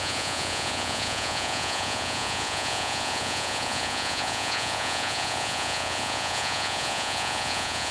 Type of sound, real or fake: fake